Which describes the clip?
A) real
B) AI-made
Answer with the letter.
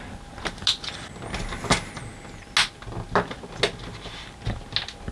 A